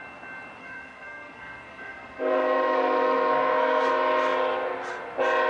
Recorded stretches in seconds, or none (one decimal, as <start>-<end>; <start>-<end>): 0.0-0.6; 3.9-5.5